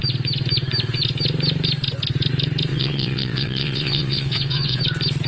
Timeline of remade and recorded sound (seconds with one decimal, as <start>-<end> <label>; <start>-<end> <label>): 0.0-2.7 recorded; 2.7-4.8 remade; 4.8-5.3 recorded